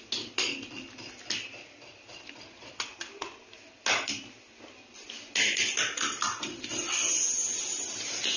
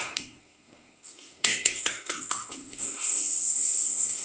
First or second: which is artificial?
second